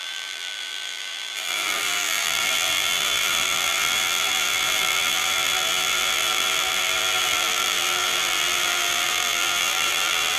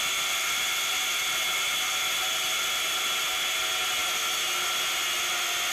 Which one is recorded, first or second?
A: second